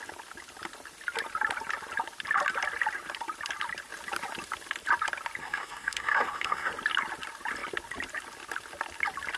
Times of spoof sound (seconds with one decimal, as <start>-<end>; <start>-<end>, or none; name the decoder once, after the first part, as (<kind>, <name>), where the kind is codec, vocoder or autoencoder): 5.4-6.7 (codec, SNAC)